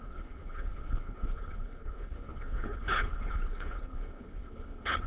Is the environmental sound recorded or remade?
remade